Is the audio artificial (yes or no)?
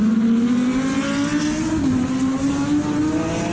no